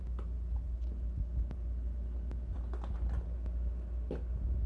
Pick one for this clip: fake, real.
real